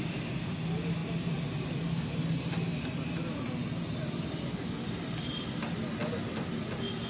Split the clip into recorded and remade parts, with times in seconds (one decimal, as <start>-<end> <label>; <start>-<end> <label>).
0.0-7.1 recorded